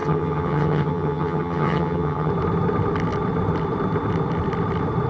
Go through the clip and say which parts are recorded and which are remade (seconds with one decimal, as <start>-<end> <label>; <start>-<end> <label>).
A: 0.0-2.3 remade; 2.3-5.1 recorded